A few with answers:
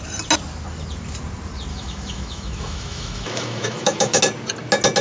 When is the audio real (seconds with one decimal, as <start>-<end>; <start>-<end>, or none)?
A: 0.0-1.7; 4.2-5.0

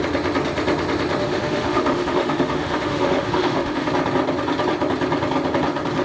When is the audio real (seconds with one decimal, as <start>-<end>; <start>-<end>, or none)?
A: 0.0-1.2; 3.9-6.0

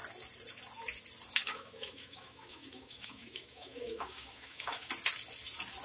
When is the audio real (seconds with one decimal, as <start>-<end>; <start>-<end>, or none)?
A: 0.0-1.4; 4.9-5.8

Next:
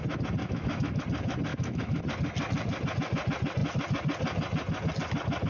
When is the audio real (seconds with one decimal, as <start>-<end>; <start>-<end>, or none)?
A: 0.0-0.4; 1.0-1.5; 2.0-5.5